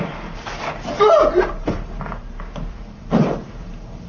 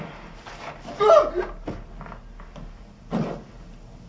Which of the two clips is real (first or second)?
second